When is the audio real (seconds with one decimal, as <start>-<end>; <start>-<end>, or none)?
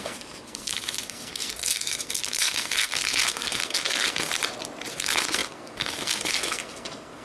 4.3-4.9